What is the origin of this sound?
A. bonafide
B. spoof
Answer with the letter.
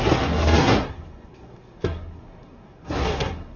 B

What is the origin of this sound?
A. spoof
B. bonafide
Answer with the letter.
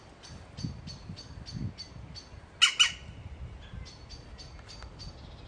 B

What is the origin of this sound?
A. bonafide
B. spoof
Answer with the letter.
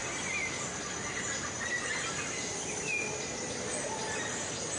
A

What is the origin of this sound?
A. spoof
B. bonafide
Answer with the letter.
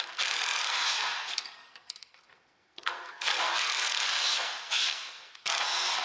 A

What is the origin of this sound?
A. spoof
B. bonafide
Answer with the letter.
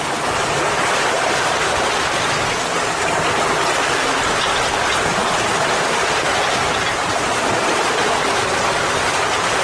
B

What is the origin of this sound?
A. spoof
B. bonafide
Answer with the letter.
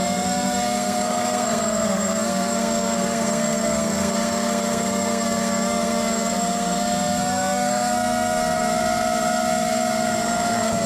A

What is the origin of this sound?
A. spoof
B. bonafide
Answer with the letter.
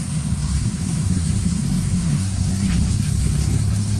A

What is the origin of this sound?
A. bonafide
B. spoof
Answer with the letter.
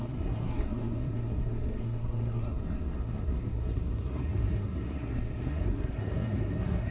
B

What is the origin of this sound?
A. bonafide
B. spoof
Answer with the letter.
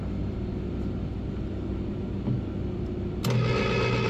A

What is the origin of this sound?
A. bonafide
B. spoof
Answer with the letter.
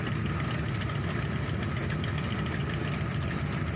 A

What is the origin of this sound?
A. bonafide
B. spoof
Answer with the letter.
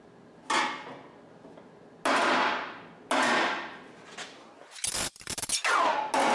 A